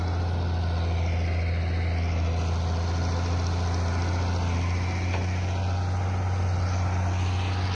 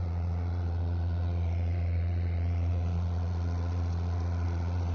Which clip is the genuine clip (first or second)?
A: first